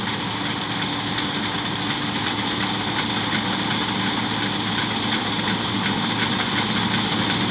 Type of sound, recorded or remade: recorded